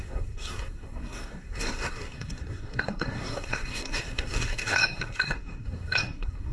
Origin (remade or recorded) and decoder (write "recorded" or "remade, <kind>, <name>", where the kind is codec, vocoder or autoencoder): remade, codec, SNAC